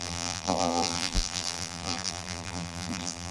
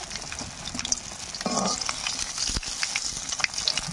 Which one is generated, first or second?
first